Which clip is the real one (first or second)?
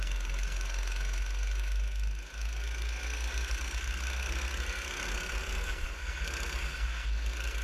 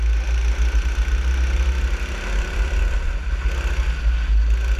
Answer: second